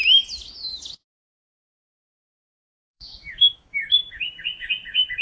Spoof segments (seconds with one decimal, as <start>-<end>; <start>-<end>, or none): 2.0-4.4